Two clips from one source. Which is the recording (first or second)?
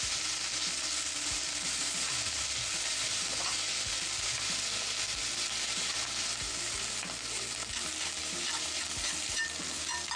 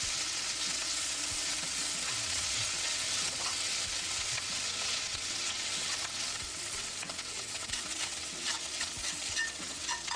first